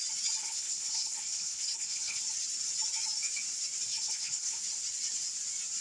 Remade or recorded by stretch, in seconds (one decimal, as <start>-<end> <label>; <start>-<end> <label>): 0.0-0.4 recorded; 0.4-2.2 remade; 2.2-3.9 recorded; 3.9-4.6 remade; 4.6-5.8 recorded